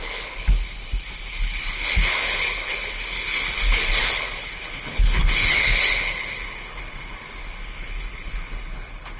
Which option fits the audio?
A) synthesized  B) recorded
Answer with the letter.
A